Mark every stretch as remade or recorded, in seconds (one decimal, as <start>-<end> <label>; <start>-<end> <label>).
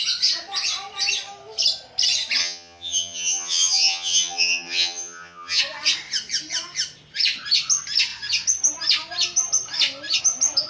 0.0-2.4 recorded; 2.4-5.6 remade; 5.6-10.7 recorded